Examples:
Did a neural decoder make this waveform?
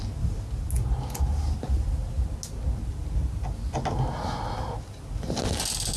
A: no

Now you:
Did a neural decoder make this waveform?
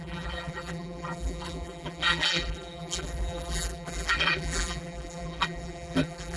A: yes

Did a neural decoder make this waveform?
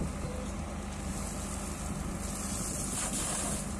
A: no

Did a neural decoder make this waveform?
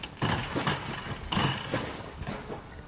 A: yes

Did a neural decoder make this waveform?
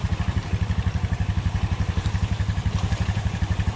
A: yes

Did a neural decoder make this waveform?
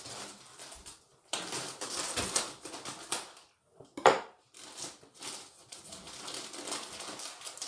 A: no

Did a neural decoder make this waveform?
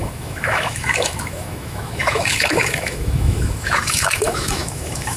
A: yes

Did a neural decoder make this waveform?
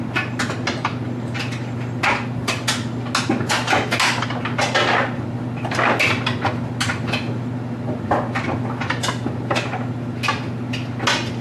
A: no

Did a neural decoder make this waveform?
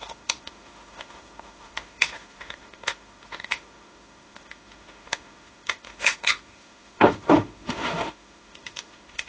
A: yes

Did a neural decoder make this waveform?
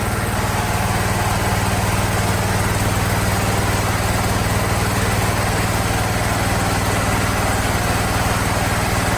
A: no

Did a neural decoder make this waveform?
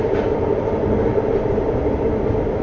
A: no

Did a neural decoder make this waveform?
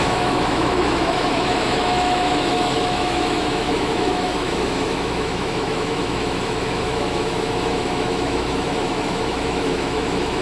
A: yes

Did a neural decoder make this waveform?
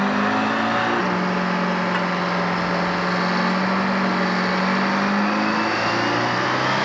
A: no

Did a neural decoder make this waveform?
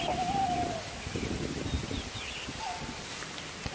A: no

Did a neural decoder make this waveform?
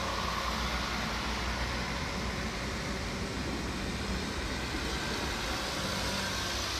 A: no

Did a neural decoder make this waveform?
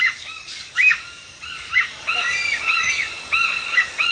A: yes